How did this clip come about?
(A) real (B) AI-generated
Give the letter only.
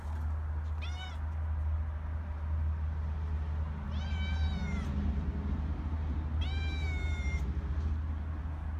A